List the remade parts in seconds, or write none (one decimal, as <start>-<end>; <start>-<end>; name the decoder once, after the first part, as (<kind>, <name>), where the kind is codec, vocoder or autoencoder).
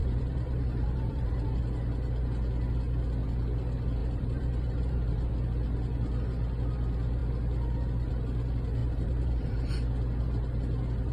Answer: 0.0-1.6 (vocoder, BigVGAN v2); 4.0-5.3; 8.8-9.7